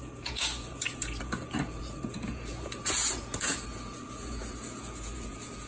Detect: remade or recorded remade